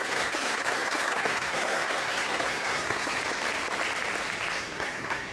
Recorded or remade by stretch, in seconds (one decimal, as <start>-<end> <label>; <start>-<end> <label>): 0.0-3.2 remade; 3.2-4.6 recorded; 4.6-5.3 remade